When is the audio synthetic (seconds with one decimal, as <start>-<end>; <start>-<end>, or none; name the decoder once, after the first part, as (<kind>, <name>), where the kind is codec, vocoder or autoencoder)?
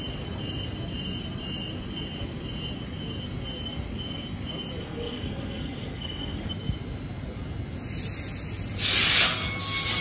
4.8-6.5 (codec, SNAC)